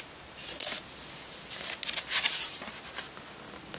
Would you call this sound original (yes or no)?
yes